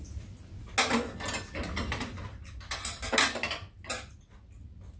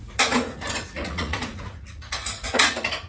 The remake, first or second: second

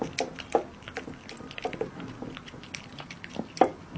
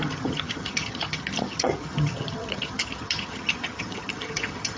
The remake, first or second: second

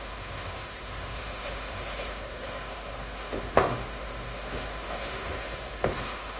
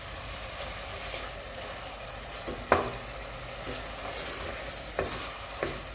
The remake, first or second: first